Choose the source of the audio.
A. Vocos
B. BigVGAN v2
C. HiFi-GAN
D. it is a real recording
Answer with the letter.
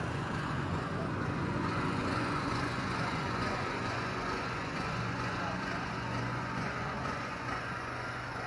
A